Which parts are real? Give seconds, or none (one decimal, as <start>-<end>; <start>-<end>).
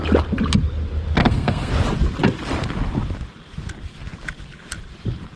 0.0-1.2; 1.7-5.4